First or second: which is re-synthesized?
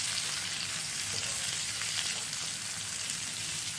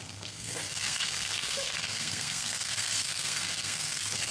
second